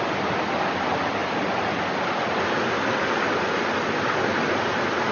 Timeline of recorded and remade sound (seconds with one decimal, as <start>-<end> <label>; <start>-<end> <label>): 0.0-5.1 recorded